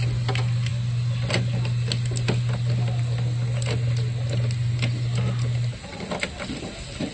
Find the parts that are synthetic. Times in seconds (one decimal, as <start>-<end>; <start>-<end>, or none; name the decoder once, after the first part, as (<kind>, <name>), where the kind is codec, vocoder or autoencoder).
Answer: none

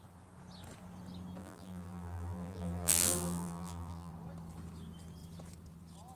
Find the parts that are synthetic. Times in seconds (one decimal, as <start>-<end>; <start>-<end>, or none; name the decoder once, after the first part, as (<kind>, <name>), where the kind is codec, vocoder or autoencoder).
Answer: 1.4-4.1 (vocoder, BigVGAN v2)

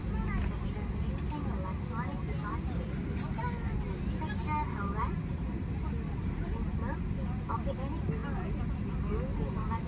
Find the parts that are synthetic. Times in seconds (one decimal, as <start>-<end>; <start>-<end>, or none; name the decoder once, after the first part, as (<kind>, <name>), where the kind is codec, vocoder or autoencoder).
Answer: none

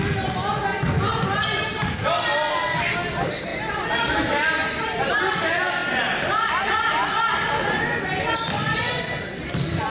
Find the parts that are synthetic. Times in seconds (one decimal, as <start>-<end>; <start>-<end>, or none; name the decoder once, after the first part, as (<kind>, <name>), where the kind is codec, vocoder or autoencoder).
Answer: none